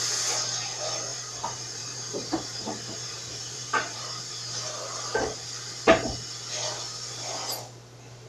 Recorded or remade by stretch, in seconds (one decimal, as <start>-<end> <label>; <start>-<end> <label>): 0.0-1.1 recorded; 1.1-4.3 remade; 4.3-8.3 recorded